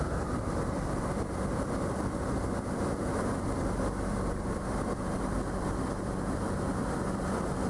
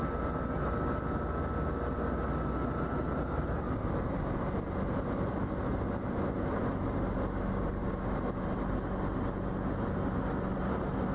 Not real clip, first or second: first